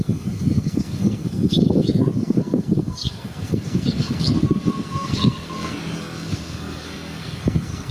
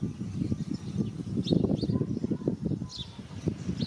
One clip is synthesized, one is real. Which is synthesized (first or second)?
first